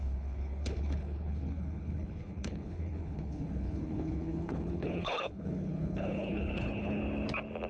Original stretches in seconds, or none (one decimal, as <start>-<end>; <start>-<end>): 7.0-7.7